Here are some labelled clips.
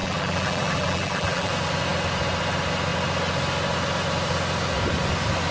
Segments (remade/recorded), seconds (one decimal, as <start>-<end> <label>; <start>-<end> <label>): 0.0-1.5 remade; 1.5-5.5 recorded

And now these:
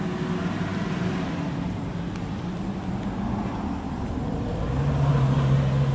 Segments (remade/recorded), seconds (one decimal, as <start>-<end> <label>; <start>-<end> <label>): 0.0-5.9 recorded

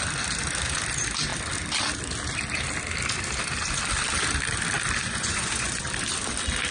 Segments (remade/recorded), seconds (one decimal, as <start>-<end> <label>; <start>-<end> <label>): 0.0-5.0 recorded; 5.0-5.8 remade; 5.8-6.7 recorded